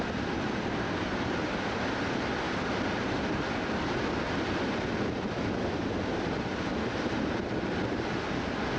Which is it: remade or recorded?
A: recorded